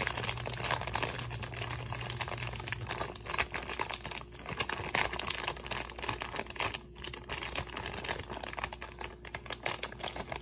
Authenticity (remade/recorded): recorded